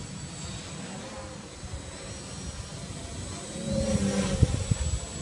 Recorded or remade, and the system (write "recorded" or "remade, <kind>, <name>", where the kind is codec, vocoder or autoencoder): recorded